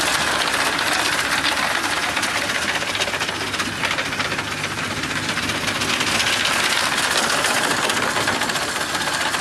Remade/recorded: recorded